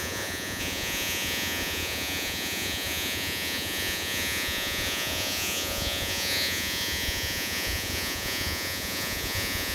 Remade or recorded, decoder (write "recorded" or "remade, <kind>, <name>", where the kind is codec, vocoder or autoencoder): remade, vocoder, Vocos